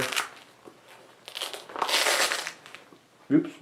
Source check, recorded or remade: recorded